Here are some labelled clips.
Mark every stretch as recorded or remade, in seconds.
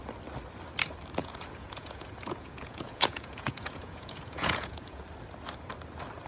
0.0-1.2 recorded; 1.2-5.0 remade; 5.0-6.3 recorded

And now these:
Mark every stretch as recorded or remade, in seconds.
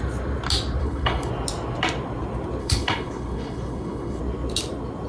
0.0-0.8 recorded; 0.8-1.3 remade; 1.3-2.6 recorded; 2.6-4.2 remade; 4.2-5.1 recorded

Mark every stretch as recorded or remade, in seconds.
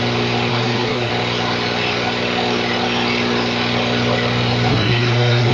0.0-0.5 recorded; 0.5-1.1 remade; 1.1-4.7 recorded; 4.7-5.5 remade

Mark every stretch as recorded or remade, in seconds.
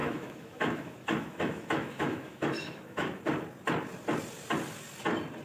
0.0-3.2 remade; 3.2-5.4 recorded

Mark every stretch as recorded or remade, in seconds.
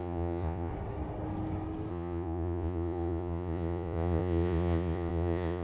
0.0-0.7 remade; 0.7-1.9 recorded; 1.9-5.6 remade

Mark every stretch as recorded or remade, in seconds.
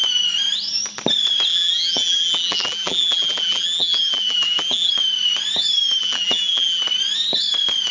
0.0-1.5 recorded; 1.5-4.9 remade; 4.9-6.0 recorded; 6.0-6.8 remade; 6.8-7.9 recorded